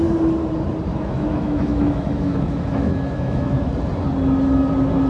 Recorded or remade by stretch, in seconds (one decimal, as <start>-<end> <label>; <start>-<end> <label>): 0.0-0.9 recorded; 0.9-3.7 remade; 3.7-5.1 recorded

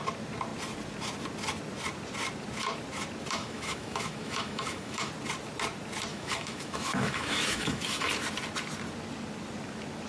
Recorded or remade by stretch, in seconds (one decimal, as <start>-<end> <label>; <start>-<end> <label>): 0.0-3.4 recorded; 3.4-5.1 remade; 5.1-6.1 recorded; 6.1-8.1 remade; 8.1-10.1 recorded

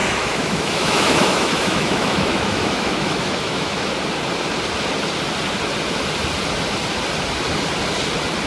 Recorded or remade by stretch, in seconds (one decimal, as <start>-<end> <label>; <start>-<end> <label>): 0.0-3.9 remade; 3.9-8.5 recorded

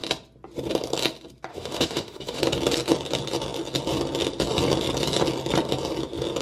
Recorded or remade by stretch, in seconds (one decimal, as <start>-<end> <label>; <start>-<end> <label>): 0.0-1.5 recorded; 1.5-2.4 remade; 2.4-6.4 recorded

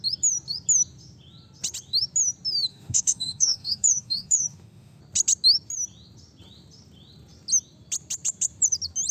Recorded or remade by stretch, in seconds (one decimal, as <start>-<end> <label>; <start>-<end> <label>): 0.0-2.7 recorded; 2.7-5.0 remade; 5.0-9.1 recorded

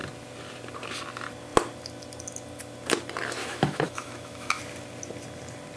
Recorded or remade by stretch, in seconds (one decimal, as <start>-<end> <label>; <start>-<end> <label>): 0.0-3.4 recorded; 3.4-4.6 remade; 4.6-5.8 recorded